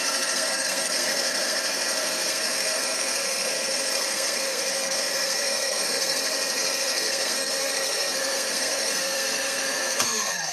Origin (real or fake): fake